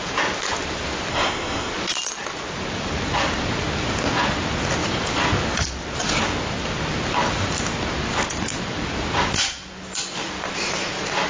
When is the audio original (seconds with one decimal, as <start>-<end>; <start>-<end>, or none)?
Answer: 0.0-1.1; 1.7-11.3